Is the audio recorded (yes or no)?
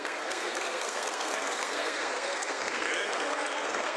no